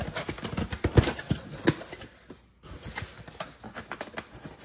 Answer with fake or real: real